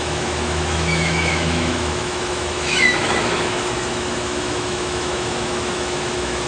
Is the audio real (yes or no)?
no